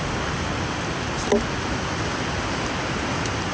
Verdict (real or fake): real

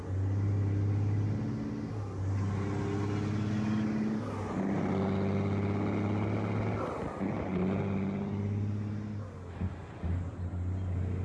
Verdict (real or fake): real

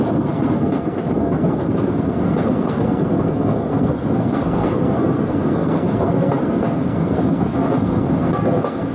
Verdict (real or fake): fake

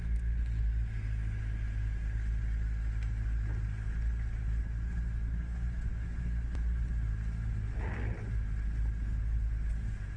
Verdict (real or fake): real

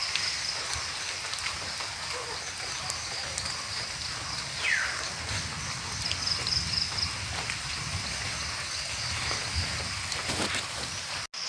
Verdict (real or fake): real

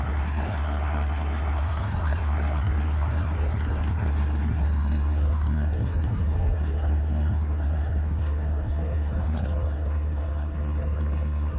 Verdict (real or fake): fake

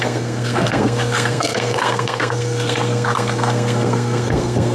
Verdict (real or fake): fake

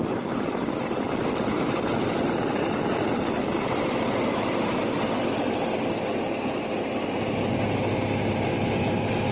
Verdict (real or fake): real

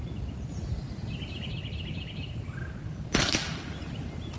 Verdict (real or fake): real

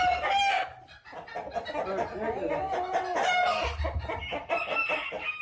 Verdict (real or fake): real